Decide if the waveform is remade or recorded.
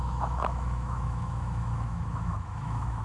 remade